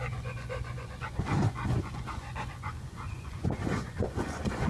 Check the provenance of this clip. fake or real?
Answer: fake